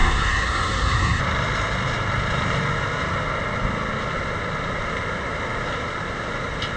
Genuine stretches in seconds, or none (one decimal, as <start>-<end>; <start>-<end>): 1.2-6.8